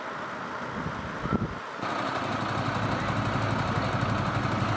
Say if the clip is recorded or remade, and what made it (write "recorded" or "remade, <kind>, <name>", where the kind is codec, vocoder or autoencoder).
recorded